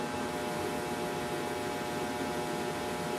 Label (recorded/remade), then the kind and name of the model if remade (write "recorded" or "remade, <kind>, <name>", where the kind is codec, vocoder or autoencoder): recorded